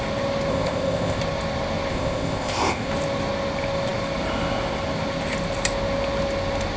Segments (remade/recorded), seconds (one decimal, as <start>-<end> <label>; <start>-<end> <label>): 0.0-0.5 recorded; 0.5-1.2 remade; 1.2-1.9 recorded; 1.9-2.9 remade; 2.9-6.8 recorded